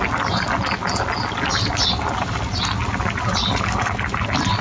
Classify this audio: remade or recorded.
recorded